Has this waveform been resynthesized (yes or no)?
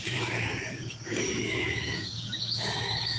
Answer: yes